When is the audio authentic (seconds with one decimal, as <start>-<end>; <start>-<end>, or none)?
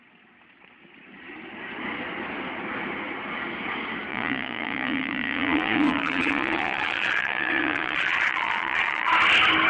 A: 0.0-4.1; 9.1-9.7